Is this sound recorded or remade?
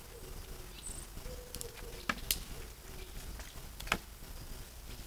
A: recorded